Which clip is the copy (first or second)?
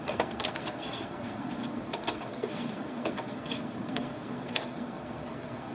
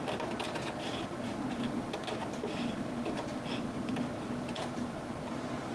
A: first